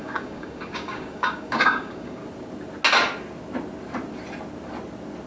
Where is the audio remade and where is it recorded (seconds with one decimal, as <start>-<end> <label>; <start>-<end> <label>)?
0.0-2.2 remade; 2.2-5.3 recorded